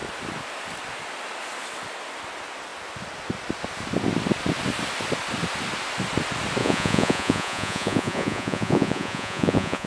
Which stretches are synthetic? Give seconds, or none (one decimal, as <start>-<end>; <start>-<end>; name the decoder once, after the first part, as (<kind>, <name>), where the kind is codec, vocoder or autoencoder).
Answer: 6.6-9.9 (vocoder, Vocos)